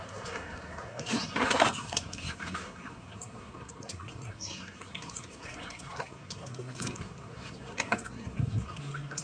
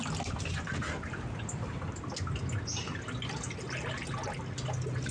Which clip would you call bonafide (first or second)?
second